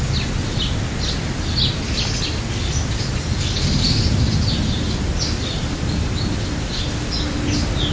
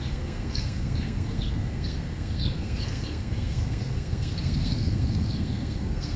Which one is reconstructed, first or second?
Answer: second